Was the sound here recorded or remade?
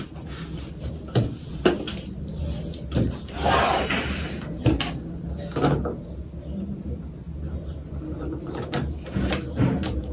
recorded